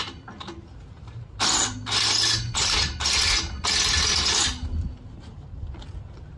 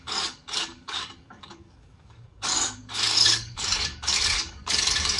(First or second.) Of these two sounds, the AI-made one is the second